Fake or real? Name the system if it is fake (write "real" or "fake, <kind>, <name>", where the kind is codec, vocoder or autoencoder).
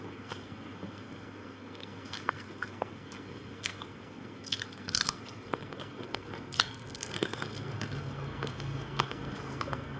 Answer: fake, codec, SNAC